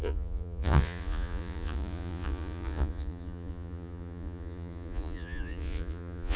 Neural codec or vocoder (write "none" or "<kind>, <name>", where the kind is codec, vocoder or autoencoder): vocoder, Vocos